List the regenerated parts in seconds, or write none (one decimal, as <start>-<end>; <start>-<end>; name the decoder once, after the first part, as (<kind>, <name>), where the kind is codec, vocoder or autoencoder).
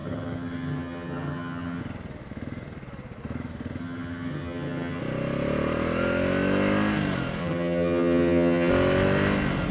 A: 0.0-1.8 (vocoder, HiFi-GAN); 3.8-5.0; 7.4-8.7